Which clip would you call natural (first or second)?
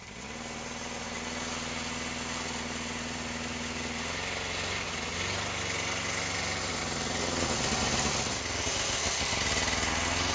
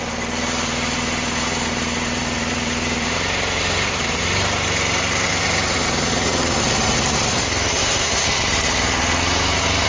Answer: first